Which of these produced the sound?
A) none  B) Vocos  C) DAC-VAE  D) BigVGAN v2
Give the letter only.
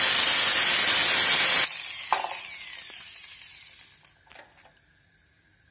A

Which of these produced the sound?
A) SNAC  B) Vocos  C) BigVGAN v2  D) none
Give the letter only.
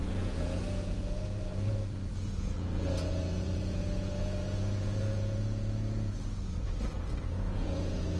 B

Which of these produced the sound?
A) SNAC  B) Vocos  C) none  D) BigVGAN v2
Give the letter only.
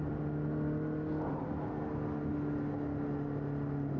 C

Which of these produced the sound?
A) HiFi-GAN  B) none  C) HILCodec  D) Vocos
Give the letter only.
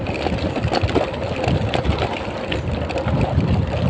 B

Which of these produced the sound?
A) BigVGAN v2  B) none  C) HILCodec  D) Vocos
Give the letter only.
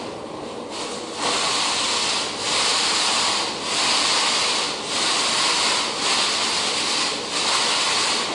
B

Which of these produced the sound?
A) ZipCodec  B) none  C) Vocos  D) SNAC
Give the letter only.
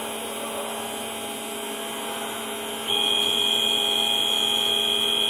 B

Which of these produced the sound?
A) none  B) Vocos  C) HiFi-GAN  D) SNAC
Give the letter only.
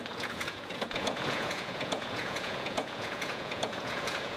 B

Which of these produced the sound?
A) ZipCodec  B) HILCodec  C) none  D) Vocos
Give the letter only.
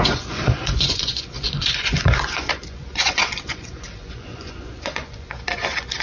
D